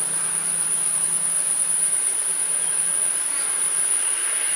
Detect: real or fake real